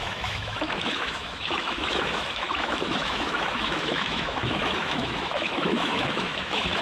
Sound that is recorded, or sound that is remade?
remade